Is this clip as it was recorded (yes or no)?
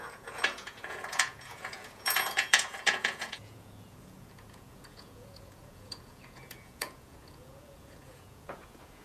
no